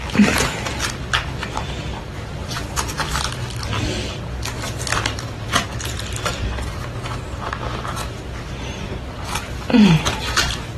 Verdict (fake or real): real